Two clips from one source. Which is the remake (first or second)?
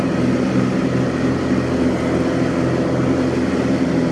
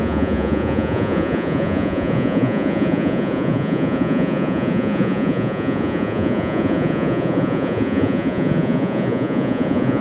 second